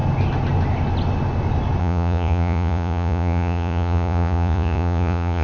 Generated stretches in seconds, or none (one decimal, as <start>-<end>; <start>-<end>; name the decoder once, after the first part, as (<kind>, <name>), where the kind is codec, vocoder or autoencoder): 1.8-5.4 (vocoder, Vocos)